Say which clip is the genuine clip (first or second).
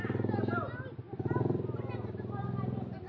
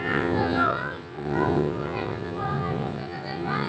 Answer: first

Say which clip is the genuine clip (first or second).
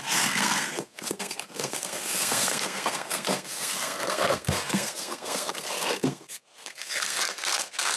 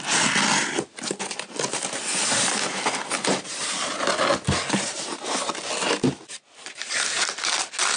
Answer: second